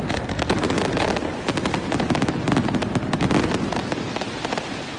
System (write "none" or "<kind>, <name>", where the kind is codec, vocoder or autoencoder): none